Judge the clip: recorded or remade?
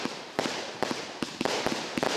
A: recorded